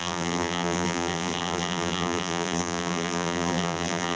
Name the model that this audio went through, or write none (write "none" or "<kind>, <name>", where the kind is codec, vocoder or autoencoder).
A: vocoder, BigVGAN v2